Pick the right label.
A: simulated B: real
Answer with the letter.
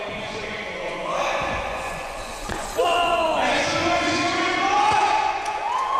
A